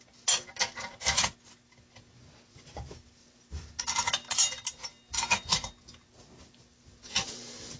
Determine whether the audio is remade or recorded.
recorded